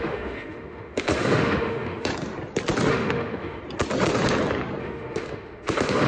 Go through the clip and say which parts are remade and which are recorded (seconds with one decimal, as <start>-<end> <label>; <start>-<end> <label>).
0.0-2.1 remade; 2.1-2.9 recorded; 2.9-3.6 remade; 3.6-4.8 recorded; 4.8-6.1 remade